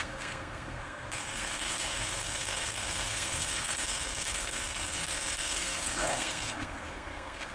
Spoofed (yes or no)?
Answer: yes